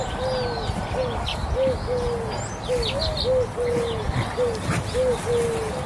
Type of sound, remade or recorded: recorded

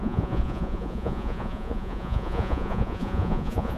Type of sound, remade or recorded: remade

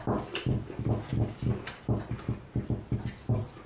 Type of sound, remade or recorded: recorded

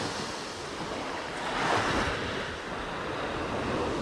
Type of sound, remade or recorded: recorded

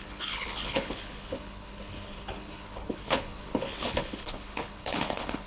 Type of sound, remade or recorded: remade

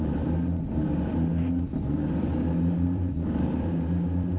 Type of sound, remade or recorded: remade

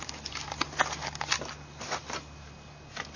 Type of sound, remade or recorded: recorded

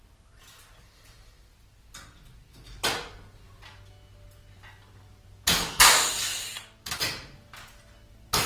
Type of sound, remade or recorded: recorded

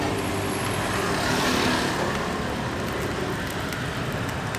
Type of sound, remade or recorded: recorded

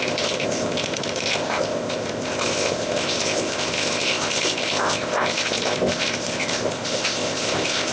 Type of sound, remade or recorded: remade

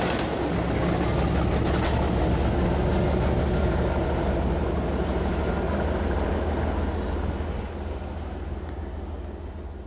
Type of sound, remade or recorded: recorded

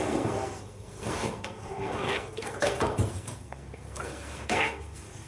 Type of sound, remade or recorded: remade